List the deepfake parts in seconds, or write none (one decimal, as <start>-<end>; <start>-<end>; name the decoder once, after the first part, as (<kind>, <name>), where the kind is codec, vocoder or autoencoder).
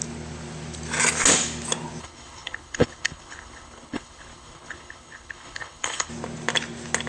2.0-6.1 (codec, HILCodec)